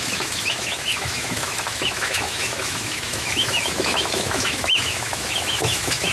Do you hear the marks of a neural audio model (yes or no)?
yes